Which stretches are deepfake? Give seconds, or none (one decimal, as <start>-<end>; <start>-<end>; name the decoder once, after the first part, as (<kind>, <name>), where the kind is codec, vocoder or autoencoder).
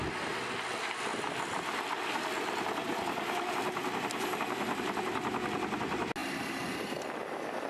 none